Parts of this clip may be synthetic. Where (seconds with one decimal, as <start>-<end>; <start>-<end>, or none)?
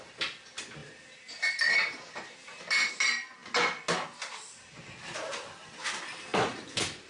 none